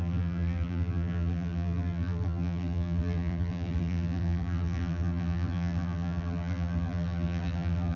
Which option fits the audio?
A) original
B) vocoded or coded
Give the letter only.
B